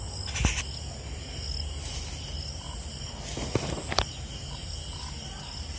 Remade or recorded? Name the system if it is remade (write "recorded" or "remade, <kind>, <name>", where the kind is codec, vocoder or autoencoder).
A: recorded